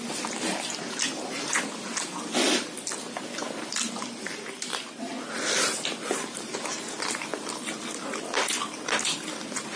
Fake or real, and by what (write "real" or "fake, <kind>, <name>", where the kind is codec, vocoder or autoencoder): real